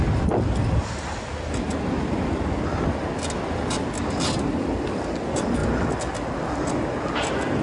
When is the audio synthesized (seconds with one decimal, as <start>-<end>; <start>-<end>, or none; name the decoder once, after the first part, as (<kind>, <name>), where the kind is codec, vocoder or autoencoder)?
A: none